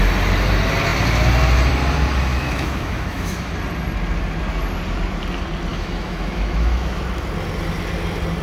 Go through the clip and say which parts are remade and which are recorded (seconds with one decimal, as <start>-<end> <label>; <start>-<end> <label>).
0.0-2.3 recorded; 2.3-3.5 remade; 3.5-5.7 recorded; 5.7-7.0 remade; 7.0-8.4 recorded